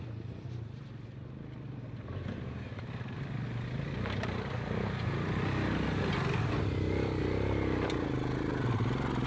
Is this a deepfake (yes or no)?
no